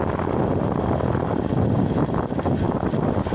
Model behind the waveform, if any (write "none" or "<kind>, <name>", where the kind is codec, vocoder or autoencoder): none